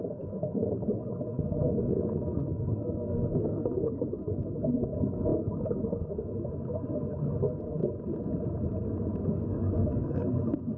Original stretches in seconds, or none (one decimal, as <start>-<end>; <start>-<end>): 7.8-9.2